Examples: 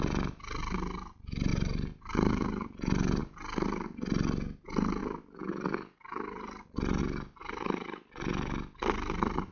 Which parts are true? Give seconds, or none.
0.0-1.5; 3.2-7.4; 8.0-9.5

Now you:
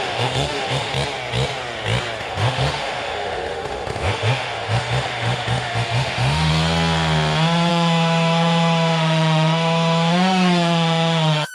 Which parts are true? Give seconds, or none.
0.9-2.2; 6.5-7.7

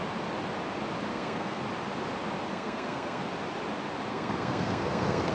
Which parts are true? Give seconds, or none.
0.0-1.1; 1.6-2.5; 3.2-4.1

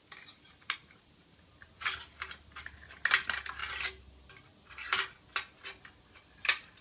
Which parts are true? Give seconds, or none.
0.0-6.8

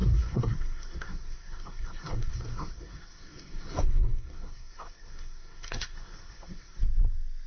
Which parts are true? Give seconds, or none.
6.8-7.5

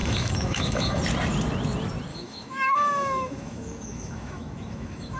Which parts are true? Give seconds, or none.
1.0-2.1